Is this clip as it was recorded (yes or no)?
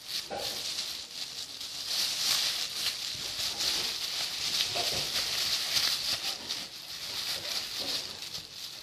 yes